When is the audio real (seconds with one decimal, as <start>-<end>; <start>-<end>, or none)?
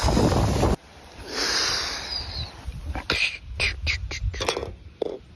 0.0-5.4